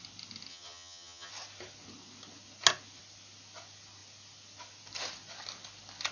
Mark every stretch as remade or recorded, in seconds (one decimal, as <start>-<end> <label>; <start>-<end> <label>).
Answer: 0.0-0.5 recorded; 0.5-1.3 remade; 1.3-6.1 recorded